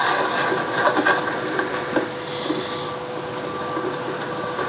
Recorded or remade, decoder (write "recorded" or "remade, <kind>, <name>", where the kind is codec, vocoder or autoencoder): recorded